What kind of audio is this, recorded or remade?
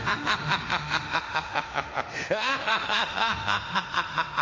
remade